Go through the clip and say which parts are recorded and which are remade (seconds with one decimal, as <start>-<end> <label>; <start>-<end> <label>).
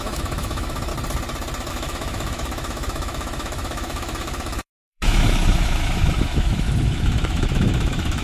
0.0-0.9 remade; 0.9-1.7 recorded; 1.7-8.2 remade